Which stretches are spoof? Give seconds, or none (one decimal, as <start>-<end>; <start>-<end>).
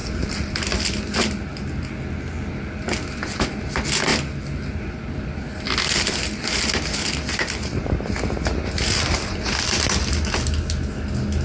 none